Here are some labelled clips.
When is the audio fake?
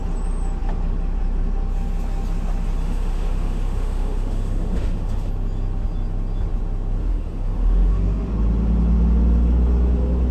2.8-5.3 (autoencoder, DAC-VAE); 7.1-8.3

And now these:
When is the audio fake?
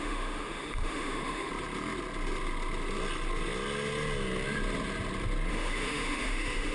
0.0-1.5 (autoencoder, DAC-VAE); 5.5-6.7